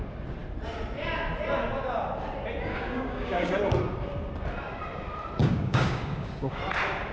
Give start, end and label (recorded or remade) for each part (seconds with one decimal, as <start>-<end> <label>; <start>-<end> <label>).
0.0-2.7 recorded; 2.7-3.6 remade; 3.6-5.4 recorded; 5.4-6.6 remade; 6.6-7.1 recorded